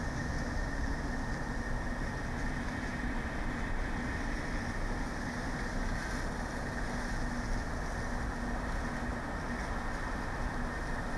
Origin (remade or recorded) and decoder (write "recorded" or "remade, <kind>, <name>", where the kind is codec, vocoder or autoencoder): recorded